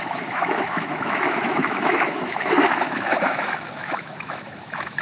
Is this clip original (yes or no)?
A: no